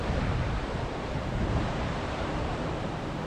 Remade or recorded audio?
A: remade